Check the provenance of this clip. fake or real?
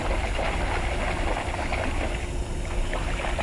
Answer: real